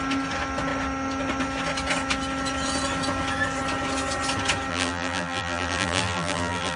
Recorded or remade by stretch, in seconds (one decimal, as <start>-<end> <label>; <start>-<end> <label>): 0.0-4.7 recorded; 4.7-6.8 remade